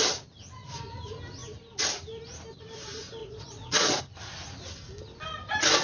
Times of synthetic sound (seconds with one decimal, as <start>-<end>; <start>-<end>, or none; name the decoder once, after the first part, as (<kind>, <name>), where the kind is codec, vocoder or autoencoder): 3.2-4.0 (vocoder, Vocos)